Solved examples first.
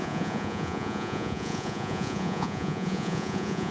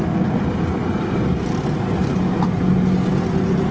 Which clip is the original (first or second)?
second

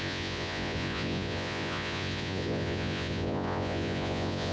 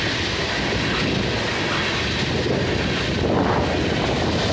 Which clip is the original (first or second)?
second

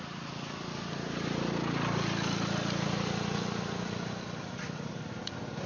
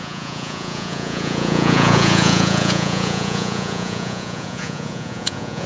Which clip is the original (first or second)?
first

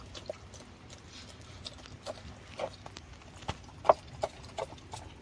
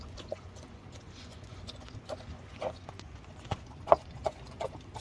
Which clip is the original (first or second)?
first